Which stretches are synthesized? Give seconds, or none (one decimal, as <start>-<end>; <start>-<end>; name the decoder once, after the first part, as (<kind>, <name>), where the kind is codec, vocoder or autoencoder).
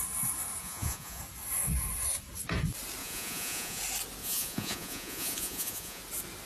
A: 0.6-1.2 (vocoder, Vocos); 3.0-3.8; 4.2-6.0